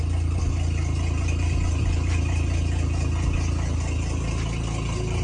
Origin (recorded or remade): recorded